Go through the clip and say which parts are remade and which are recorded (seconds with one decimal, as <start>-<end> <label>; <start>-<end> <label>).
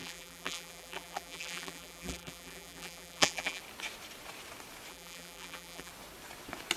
0.0-3.6 remade; 3.6-4.9 recorded; 4.9-5.9 remade; 5.9-6.8 recorded